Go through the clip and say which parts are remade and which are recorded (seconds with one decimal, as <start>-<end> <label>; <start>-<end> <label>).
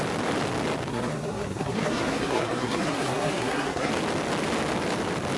0.0-0.9 recorded; 0.9-3.9 remade; 3.9-5.4 recorded